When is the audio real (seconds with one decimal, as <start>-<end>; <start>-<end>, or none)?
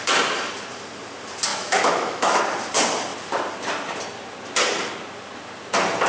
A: 0.0-1.5; 2.4-6.1